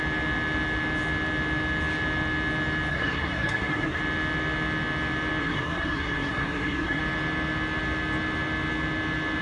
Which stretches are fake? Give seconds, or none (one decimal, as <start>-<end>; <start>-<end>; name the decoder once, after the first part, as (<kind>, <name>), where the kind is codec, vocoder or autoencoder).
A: 2.9-4.0 (codec, SNAC); 5.4-7.0